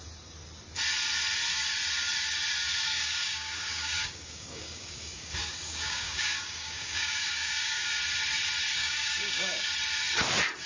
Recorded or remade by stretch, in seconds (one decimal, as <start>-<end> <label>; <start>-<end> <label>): 0.0-2.8 recorded; 2.8-8.0 remade; 8.0-8.8 recorded; 8.8-9.7 remade; 9.7-10.7 recorded